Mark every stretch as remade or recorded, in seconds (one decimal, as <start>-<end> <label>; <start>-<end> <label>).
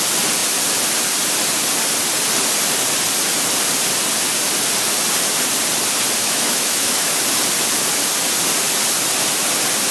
0.0-6.2 recorded; 6.2-7.2 remade; 7.2-9.9 recorded